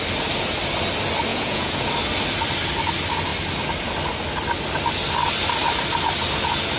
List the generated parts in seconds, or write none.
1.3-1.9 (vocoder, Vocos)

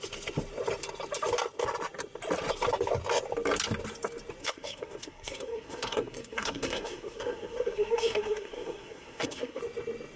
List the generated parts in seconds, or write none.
4.4-9.6 (codec, SNAC)

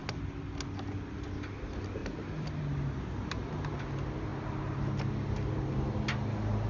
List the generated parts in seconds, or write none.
none